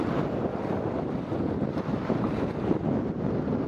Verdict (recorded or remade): recorded